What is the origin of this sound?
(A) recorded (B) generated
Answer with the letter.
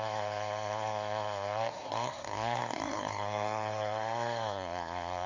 B